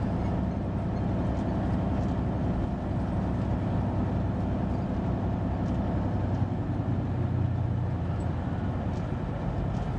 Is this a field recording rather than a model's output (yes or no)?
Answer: yes